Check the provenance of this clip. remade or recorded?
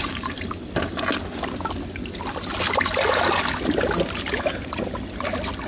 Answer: recorded